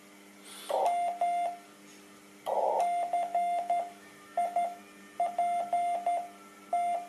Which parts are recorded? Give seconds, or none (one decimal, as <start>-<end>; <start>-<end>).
0.0-3.3; 4.8-7.1